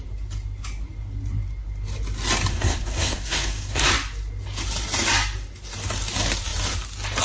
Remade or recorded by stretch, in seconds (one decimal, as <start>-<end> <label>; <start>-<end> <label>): 0.0-2.5 recorded; 2.5-3.9 remade; 3.9-7.2 recorded